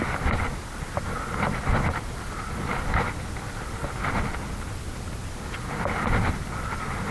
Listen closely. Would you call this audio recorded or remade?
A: recorded